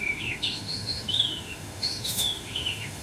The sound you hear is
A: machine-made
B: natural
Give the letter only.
A